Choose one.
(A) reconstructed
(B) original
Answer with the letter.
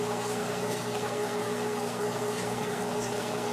A